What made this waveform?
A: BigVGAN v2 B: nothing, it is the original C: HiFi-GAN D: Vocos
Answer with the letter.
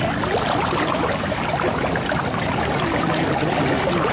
B